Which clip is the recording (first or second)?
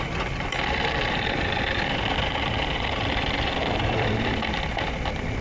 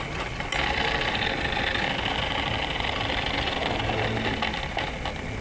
second